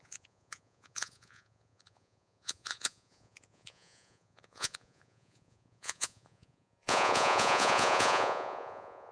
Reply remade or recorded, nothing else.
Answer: remade